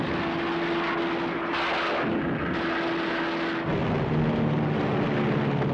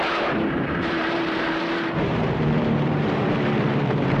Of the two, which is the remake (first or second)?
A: second